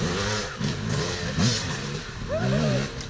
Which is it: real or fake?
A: real